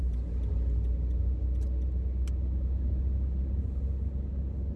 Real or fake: real